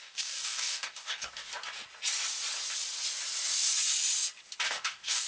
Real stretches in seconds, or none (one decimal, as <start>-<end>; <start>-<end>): 1.5-4.7